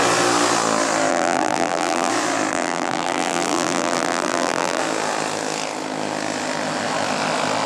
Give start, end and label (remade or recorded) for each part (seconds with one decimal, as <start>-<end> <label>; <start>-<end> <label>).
0.0-1.1 recorded; 1.1-2.1 remade; 2.1-2.5 recorded; 2.5-4.8 remade; 4.8-7.7 recorded